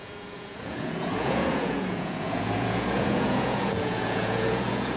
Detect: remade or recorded remade